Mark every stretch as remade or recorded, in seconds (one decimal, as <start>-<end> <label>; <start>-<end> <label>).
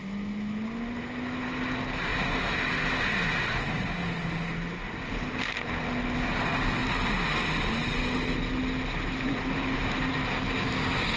0.0-11.2 recorded